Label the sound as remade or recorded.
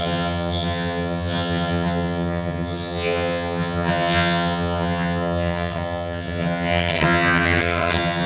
remade